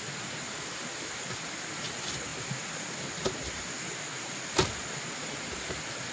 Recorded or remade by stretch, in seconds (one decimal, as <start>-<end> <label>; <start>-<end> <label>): 0.0-6.1 recorded